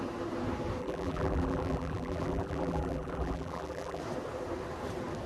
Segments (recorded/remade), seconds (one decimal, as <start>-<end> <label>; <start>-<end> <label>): 0.0-0.8 recorded; 0.8-4.0 remade; 4.0-5.3 recorded